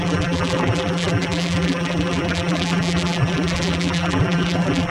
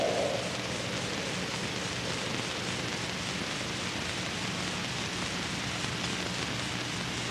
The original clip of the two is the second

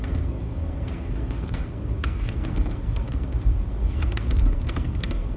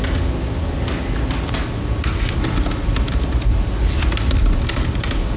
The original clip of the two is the second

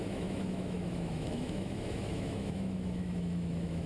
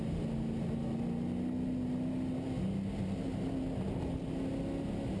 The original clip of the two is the second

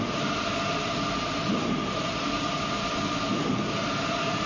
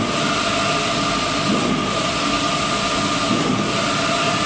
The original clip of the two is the second